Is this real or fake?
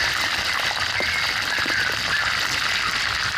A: real